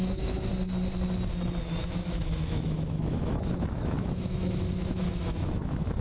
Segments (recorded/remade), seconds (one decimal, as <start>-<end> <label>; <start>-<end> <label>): 0.0-0.5 remade; 0.5-1.8 recorded; 1.8-6.0 remade

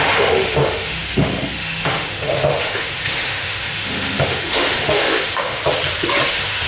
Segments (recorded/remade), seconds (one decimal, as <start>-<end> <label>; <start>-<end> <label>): 0.0-5.6 remade; 5.6-6.3 recorded; 6.3-6.7 remade

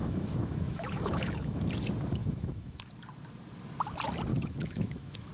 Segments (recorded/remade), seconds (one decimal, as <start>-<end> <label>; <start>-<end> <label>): 0.0-1.7 remade; 1.7-2.2 recorded; 2.2-2.8 remade; 2.8-4.3 recorded; 4.3-5.3 remade

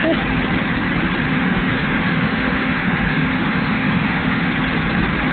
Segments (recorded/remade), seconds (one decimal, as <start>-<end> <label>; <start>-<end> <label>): 0.0-1.3 recorded; 1.3-4.5 remade; 4.5-5.3 recorded

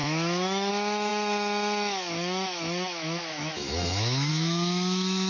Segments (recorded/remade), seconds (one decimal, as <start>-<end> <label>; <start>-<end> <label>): 0.0-5.3 remade

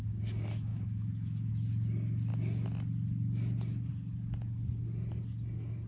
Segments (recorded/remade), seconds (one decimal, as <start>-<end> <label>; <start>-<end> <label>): 0.0-0.7 recorded; 0.7-1.5 remade; 1.5-5.9 recorded

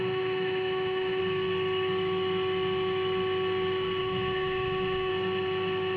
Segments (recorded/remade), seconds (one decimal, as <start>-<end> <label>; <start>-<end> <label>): 0.0-1.2 remade; 1.2-4.0 recorded; 4.0-5.1 remade; 5.1-6.0 recorded